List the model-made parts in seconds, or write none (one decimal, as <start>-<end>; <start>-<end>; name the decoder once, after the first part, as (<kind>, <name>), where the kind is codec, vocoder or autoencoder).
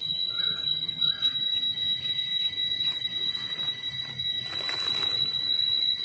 0.0-1.3 (vocoder, HiFi-GAN)